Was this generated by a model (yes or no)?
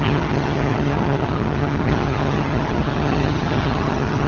yes